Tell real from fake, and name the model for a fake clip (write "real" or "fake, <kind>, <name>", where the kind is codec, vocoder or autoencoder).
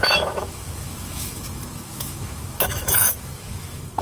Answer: fake, autoencoder, DAC-VAE